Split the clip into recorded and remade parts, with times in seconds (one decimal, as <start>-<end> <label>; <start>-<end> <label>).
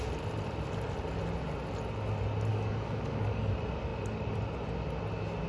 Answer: 0.0-2.5 recorded; 2.5-3.5 remade; 3.5-5.5 recorded